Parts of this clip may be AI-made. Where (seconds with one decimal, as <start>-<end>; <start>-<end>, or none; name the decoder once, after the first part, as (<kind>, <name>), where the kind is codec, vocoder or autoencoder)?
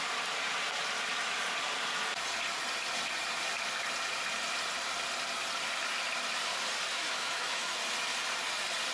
6.9-7.7 (autoencoder, DAC-VAE)